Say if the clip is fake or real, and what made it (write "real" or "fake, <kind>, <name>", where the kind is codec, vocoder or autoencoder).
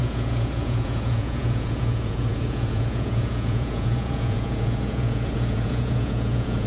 fake, vocoder, Vocos